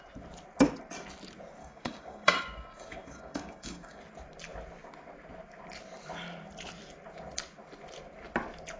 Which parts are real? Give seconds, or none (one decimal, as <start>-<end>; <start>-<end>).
0.0-1.6; 4.0-8.8